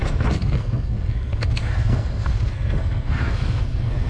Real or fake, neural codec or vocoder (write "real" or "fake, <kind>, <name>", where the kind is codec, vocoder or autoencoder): fake, codec, SNAC